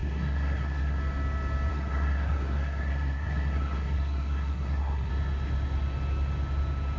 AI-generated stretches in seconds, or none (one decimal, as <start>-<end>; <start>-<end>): 0.0-1.0; 1.7-5.1